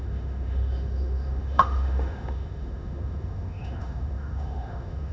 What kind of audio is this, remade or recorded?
remade